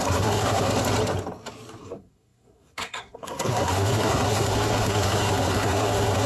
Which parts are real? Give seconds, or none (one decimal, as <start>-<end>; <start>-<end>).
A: 0.7-1.8